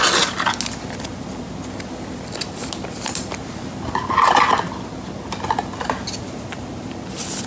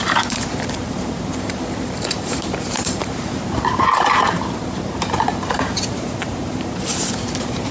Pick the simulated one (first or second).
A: second